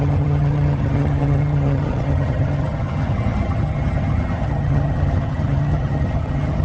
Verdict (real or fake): fake